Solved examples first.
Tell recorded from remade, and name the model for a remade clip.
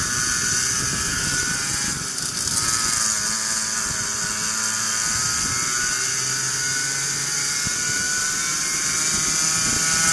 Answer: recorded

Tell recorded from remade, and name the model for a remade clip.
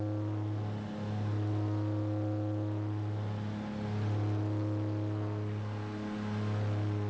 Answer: recorded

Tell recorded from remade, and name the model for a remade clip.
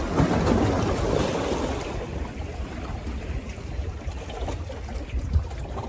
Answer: recorded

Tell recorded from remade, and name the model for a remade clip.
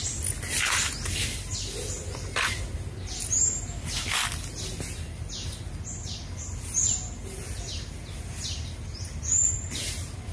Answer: recorded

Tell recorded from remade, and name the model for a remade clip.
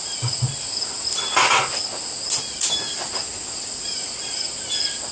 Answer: recorded